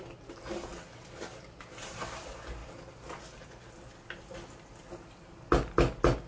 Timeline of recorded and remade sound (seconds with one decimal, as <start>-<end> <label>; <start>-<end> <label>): 0.0-6.3 recorded